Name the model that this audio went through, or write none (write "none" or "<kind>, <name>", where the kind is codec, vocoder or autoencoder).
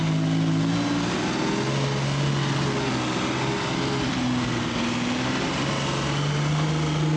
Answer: none